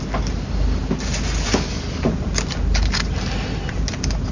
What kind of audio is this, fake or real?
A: real